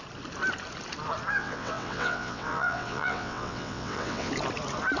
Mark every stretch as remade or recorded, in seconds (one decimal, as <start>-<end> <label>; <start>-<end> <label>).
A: 0.0-1.3 recorded; 1.3-4.3 remade; 4.3-5.0 recorded